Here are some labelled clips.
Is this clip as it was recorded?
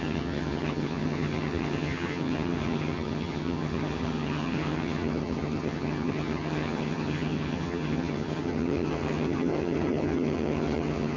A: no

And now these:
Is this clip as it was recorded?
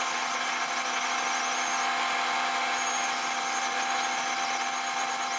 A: yes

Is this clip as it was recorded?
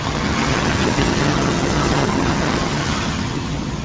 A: no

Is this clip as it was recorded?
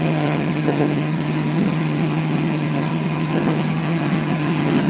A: no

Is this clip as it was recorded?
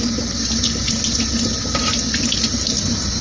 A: yes